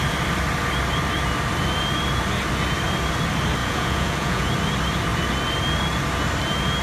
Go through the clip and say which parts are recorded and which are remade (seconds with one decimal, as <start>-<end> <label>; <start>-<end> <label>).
0.0-3.6 recorded; 3.6-4.5 remade; 4.5-6.8 recorded